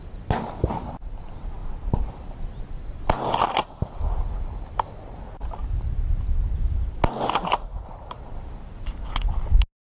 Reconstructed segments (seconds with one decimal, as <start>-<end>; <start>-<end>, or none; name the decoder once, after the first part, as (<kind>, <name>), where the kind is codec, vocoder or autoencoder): none